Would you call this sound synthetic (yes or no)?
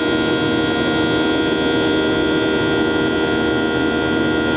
no